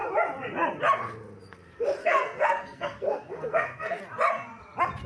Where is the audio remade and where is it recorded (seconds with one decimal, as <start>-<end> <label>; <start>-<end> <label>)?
0.0-2.0 recorded; 2.0-4.0 remade; 4.0-5.1 recorded